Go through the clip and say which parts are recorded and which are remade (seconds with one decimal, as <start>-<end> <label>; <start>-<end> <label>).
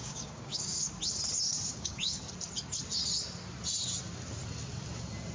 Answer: 0.0-1.0 remade; 1.0-1.7 recorded; 1.7-2.2 remade; 2.2-5.3 recorded